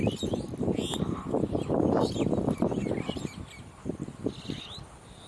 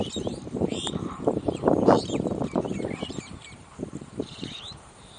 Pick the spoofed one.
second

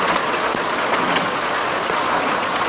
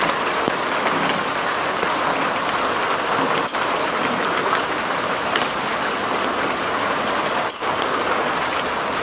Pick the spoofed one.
first